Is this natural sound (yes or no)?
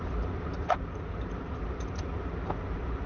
yes